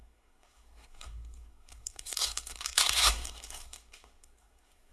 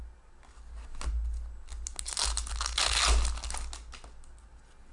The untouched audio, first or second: second